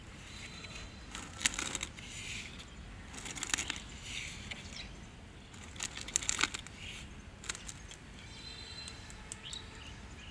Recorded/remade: recorded